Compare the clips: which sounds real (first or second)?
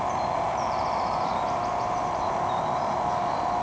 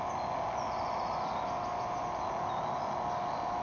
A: second